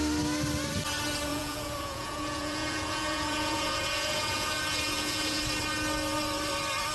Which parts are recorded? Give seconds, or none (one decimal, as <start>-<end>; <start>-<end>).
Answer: 0.0-1.3; 5.4-6.9